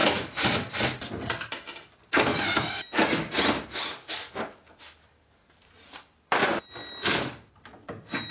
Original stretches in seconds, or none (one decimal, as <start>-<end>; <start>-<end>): 0.0-8.3